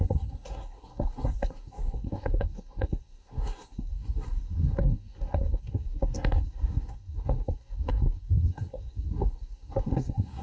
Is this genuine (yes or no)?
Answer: no